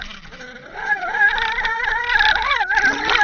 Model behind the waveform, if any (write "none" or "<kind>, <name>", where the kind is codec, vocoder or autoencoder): none